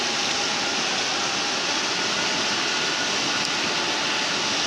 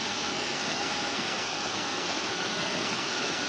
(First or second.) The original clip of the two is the first